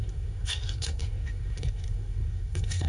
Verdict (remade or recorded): remade